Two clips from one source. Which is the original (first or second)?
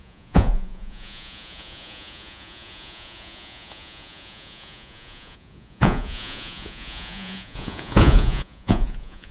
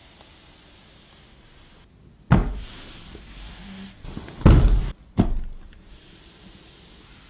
second